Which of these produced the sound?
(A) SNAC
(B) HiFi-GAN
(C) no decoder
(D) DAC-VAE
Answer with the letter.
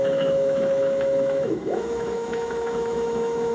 D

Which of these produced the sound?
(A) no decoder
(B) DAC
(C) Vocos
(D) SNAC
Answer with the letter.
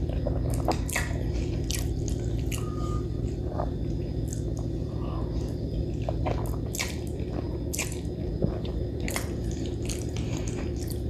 A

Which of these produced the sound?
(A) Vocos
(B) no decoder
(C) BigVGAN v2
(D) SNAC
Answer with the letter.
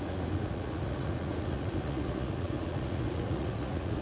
A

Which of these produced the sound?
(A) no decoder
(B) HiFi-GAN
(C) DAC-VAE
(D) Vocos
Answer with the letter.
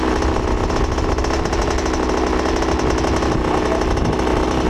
A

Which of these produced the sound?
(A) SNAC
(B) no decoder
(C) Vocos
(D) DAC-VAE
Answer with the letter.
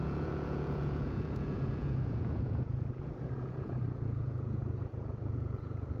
C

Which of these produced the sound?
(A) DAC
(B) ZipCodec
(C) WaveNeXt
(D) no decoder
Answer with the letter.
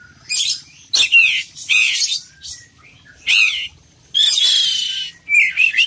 D